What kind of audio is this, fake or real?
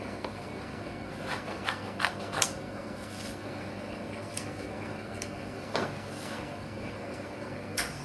fake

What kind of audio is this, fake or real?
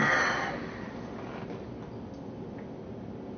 real